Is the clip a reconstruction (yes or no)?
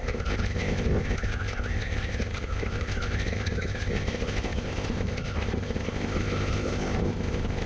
yes